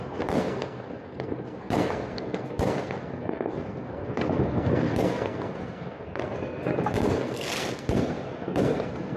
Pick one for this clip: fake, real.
fake